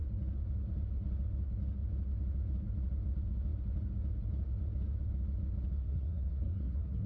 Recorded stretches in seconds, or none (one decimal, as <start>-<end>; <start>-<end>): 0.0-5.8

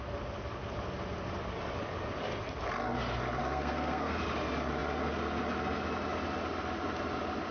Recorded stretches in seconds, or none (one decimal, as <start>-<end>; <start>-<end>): 0.0-3.4; 4.2-7.5

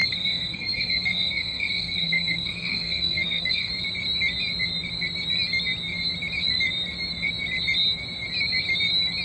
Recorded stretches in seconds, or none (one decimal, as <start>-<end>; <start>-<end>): 3.7-9.2